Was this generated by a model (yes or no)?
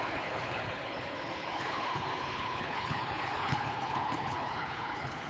yes